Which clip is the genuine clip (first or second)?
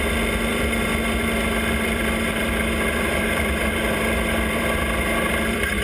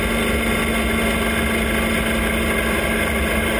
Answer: second